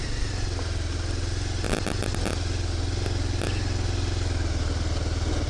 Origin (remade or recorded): recorded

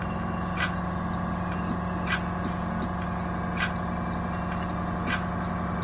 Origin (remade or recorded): recorded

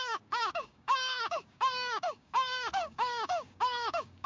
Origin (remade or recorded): remade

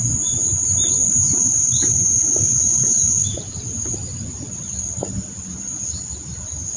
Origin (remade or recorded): remade